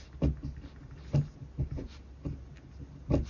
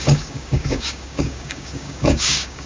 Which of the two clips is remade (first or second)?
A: second